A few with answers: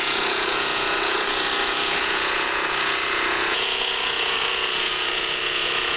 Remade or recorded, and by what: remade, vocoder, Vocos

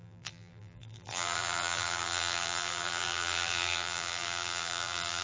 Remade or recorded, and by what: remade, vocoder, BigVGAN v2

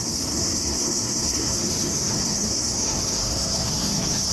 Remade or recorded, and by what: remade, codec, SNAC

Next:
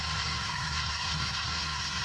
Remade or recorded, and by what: remade, codec, SNAC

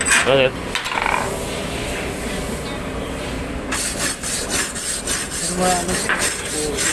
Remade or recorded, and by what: recorded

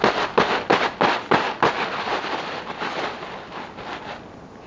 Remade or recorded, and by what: recorded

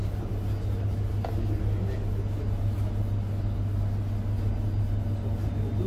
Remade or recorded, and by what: recorded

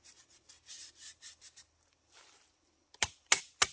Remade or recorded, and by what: recorded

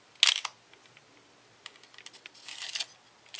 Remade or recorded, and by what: recorded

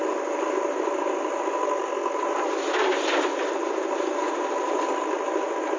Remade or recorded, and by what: recorded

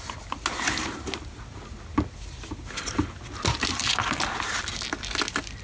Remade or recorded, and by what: recorded